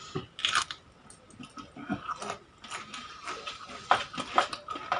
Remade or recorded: recorded